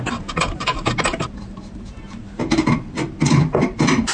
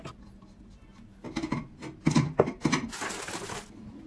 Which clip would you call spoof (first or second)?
first